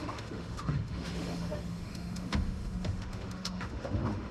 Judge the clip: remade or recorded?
remade